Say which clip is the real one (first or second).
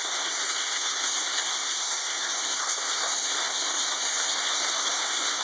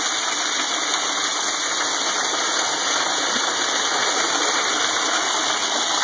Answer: second